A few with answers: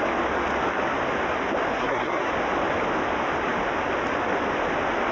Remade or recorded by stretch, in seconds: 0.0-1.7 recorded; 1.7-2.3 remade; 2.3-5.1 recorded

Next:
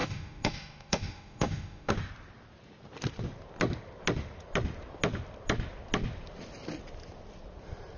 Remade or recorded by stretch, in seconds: 0.0-1.9 remade; 1.9-8.0 recorded

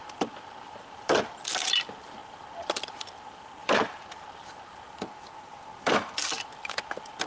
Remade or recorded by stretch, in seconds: 0.0-7.3 recorded

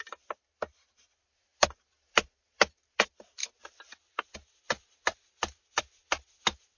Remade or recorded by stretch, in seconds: 0.0-3.4 recorded; 3.4-4.0 remade; 4.0-6.8 recorded

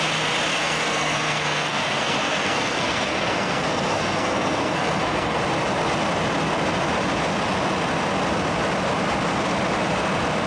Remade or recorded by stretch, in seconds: 0.0-0.5 recorded; 0.5-5.4 remade; 5.4-10.5 recorded

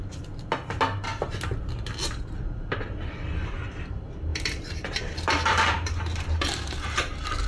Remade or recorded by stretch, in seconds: 0.0-4.3 recorded; 4.3-7.0 remade; 7.0-7.5 recorded

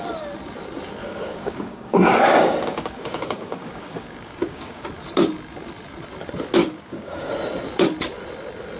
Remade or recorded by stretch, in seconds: 0.0-1.0 recorded; 1.0-4.8 remade; 4.8-6.6 recorded; 6.6-7.3 remade; 7.3-8.8 recorded

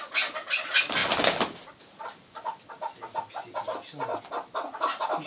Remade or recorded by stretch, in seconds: 0.0-5.3 recorded